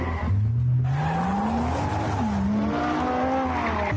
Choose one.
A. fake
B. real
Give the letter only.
B